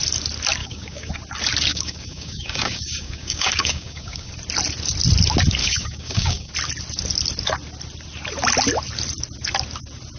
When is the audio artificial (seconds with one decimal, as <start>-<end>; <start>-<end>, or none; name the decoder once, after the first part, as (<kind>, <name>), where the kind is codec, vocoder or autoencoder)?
0.6-1.1 (codec, DAC); 1.7-4.3; 5.6-6.5